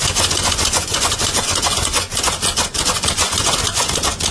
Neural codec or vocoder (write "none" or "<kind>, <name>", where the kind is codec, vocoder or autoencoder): vocoder, Vocos